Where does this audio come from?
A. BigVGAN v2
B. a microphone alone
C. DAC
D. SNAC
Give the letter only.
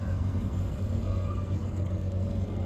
D